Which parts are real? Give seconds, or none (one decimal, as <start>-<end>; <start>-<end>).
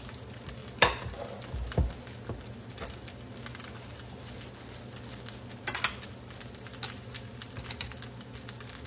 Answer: 0.0-8.9